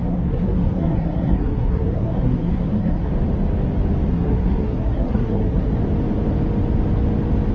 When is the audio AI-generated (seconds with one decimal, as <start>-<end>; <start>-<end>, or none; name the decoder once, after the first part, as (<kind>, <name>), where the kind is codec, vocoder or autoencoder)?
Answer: 0.0-3.1 (codec, SNAC); 4.1-5.7